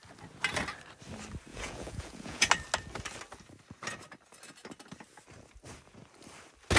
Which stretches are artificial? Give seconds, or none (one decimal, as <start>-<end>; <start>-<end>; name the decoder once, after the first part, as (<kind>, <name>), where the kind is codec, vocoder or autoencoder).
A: 1.5-2.5 (vocoder, Vocos)

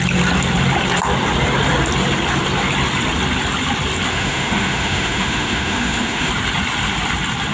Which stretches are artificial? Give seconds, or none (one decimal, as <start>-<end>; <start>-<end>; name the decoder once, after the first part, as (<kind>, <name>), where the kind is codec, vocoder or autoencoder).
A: 4.1-6.3 (autoencoder, DAC-VAE)